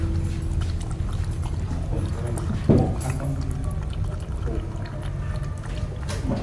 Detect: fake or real real